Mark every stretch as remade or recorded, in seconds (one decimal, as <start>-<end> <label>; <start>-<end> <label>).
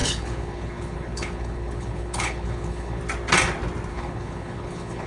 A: 0.0-3.0 remade; 3.0-3.9 recorded; 3.9-5.1 remade